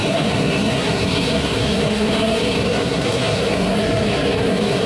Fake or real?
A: fake